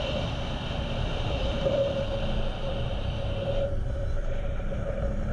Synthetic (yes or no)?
yes